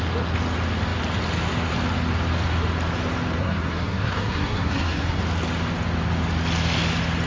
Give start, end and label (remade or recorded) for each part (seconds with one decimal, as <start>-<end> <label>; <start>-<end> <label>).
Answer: 0.0-3.4 recorded; 3.4-5.2 remade; 5.2-7.3 recorded